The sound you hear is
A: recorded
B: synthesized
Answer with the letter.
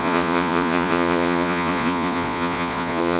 B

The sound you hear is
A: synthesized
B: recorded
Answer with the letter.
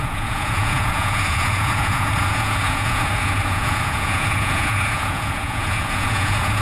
A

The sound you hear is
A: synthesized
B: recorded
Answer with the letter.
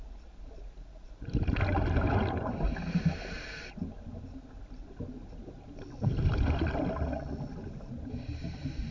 B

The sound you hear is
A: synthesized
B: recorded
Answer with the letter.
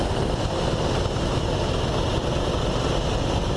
B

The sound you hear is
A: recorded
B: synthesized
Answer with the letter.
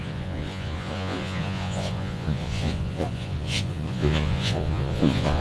B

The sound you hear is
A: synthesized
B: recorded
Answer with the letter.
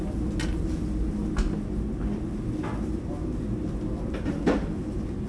B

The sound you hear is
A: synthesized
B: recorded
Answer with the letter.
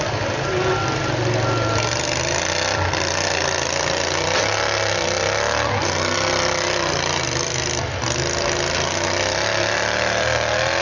B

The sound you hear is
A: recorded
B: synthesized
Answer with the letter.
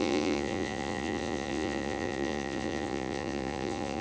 B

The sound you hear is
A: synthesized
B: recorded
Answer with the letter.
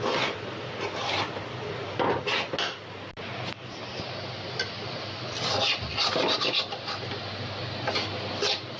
B